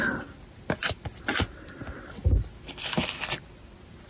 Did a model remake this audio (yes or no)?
no